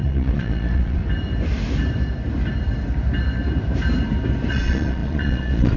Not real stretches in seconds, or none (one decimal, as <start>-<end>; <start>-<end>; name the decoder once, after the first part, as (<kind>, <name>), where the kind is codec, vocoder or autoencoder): 0.0-1.0 (vocoder, Vocos); 4.5-5.8